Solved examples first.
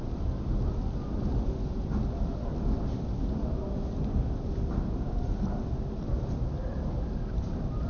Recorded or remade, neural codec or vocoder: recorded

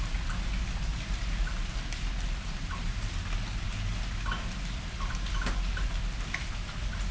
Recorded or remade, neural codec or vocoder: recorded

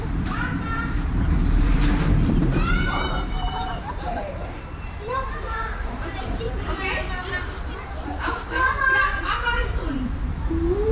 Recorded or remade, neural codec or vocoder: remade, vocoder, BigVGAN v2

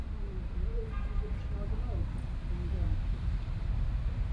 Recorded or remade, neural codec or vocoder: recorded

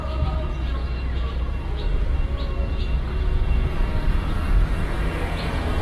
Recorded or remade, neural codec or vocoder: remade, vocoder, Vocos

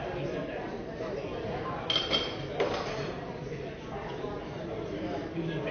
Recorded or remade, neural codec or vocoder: recorded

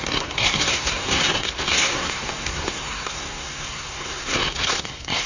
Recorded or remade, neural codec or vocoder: remade, codec, SNAC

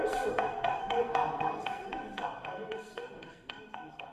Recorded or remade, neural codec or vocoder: remade, codec, SNAC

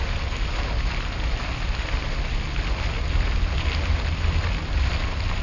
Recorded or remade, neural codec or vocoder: recorded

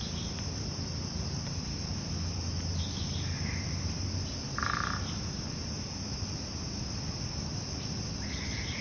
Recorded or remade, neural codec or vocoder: recorded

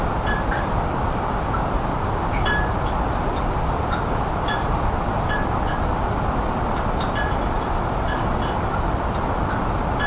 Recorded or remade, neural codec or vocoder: recorded